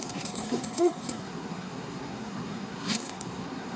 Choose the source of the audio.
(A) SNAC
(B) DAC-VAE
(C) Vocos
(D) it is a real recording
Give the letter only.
A